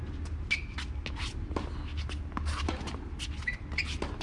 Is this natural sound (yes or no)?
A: yes